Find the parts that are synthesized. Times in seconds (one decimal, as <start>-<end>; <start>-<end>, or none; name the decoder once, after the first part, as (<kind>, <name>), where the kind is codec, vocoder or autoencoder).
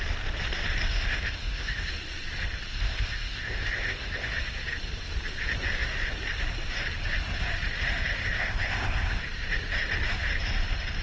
0.9-1.9 (codec, ZipCodec); 2.7-4.3; 8.2-9.2